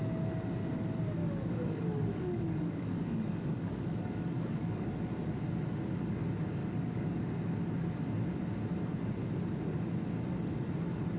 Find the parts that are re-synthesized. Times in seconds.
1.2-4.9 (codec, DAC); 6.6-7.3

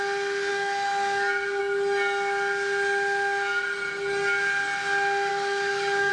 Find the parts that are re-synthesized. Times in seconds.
0.5-1.6 (codec, DAC); 5.3-6.1

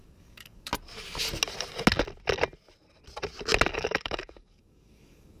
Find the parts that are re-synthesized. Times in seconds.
0.0-0.7 (codec, DAC); 3.7-5.4

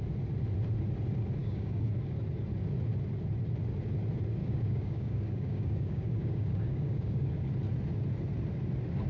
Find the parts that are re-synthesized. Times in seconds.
1.4-2.1 (codec, DAC); 4.4-7.5

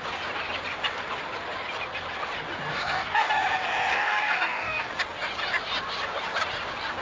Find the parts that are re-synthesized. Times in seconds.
2.7-3.3 (codec, DAC); 3.9-4.9

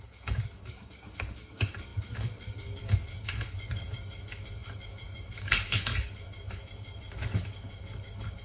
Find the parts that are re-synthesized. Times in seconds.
0.0-8.4 (codec, DAC)